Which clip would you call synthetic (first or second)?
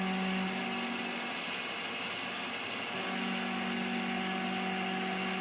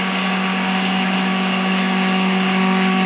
second